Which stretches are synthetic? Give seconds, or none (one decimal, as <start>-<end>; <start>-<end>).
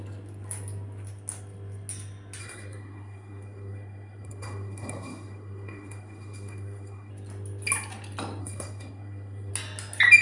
2.4-7.1; 8.4-9.5